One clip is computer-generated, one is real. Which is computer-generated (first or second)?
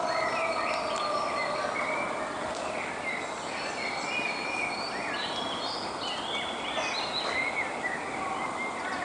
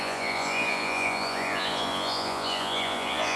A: second